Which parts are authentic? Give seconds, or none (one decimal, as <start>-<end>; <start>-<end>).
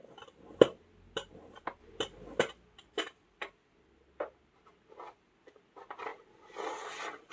0.0-7.3